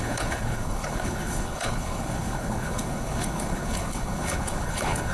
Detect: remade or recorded remade